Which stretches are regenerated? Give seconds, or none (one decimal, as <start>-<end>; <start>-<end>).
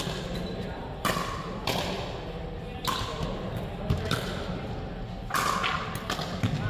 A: none